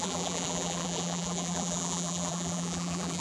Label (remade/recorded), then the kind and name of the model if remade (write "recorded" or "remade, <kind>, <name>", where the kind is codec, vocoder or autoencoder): remade, vocoder, BigVGAN v2